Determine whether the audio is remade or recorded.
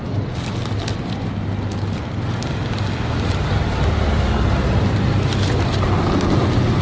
recorded